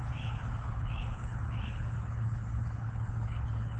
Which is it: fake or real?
fake